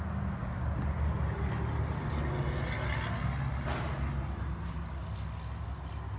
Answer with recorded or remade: recorded